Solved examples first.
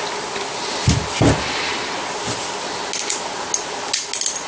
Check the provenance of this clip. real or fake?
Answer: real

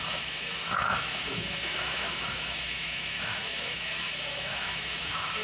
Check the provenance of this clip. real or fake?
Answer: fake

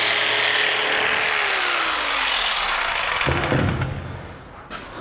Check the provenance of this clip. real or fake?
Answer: real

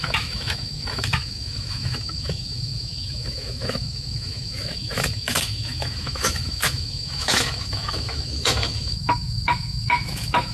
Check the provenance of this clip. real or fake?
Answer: fake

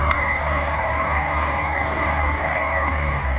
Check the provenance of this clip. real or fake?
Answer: fake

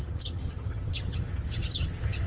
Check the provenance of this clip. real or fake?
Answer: fake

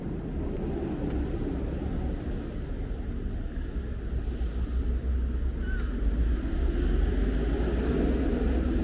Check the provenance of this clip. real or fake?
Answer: real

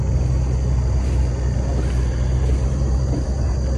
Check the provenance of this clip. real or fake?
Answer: real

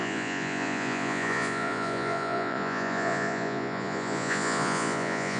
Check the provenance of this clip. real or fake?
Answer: fake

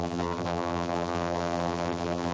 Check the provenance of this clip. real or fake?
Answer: fake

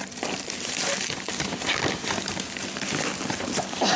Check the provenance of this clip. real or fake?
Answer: fake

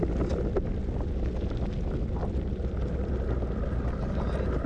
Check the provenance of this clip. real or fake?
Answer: real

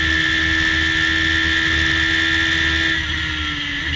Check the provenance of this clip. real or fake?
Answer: real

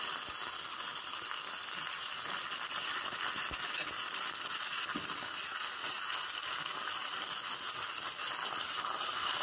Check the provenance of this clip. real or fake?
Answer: real